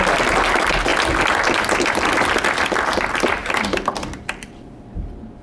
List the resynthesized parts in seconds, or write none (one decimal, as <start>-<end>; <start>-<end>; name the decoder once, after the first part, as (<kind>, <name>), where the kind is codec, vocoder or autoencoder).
3.4-4.1 (vocoder, BigVGAN v2)